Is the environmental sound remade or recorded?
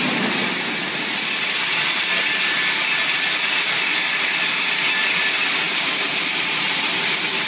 recorded